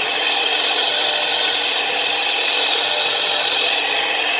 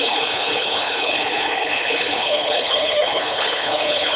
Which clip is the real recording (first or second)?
first